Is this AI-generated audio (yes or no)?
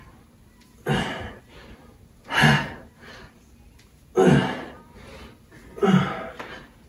no